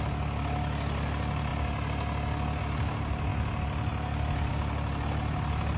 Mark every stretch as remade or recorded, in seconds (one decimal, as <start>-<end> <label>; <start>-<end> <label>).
0.0-5.8 recorded